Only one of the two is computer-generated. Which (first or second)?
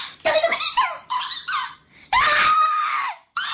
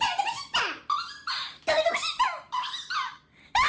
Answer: first